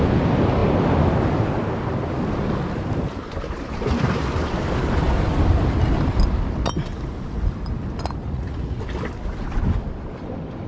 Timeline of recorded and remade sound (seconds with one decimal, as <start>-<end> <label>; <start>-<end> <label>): 0.0-8.2 recorded; 8.2-8.8 remade; 8.8-10.7 recorded